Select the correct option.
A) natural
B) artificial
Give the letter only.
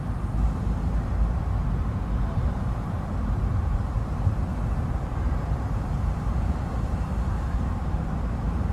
B